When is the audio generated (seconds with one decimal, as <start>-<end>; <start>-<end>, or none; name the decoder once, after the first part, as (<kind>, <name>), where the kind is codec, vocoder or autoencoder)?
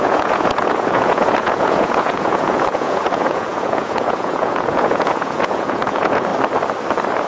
0.0-6.3 (vocoder, Vocos)